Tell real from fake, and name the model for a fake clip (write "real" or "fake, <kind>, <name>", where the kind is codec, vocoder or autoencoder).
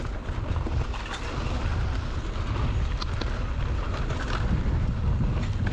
real